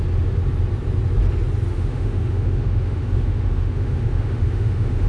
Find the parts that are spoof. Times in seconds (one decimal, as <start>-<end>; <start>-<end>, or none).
1.7-5.1